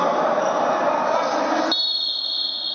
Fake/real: real